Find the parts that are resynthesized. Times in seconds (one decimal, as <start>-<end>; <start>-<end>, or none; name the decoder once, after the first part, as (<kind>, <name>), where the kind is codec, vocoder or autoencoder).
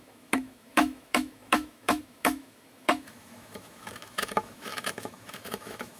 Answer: 0.0-6.0 (autoencoder, DAC-VAE)